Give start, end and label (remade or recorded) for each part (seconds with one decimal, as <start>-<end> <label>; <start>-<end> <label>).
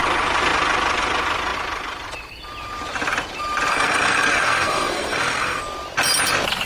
0.0-3.7 recorded; 3.7-5.6 remade; 5.6-6.7 recorded